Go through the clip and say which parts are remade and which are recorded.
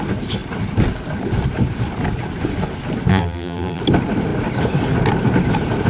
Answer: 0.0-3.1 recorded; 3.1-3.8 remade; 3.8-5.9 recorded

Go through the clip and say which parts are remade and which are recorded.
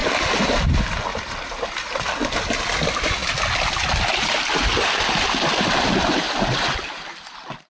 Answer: 0.0-7.8 recorded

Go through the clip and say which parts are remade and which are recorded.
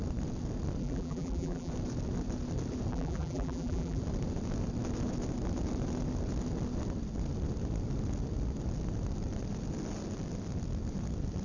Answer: 0.0-0.8 recorded; 0.8-1.7 remade; 1.7-2.9 recorded; 2.9-4.0 remade; 4.0-11.4 recorded